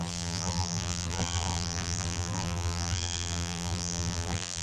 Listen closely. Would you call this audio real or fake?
fake